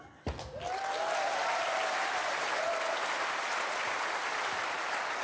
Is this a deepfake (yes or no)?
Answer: no